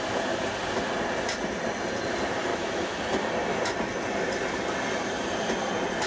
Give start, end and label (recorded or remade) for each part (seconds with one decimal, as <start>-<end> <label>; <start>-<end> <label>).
0.0-2.5 recorded; 2.5-3.0 remade; 3.0-6.1 recorded